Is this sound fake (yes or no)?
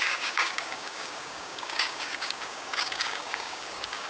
yes